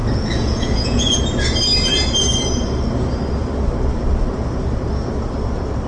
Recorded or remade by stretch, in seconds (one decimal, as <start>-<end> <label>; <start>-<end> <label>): 0.0-1.2 remade; 1.2-5.9 recorded